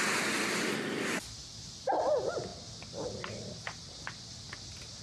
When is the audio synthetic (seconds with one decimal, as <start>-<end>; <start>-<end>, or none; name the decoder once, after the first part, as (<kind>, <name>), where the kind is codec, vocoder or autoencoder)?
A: none